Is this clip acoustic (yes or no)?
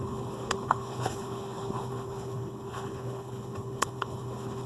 no